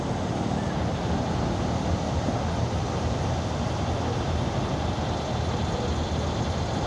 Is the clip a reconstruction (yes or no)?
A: no